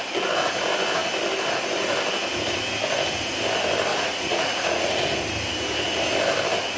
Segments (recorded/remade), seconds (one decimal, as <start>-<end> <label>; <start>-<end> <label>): 0.0-3.9 recorded; 3.9-5.0 remade; 5.0-6.8 recorded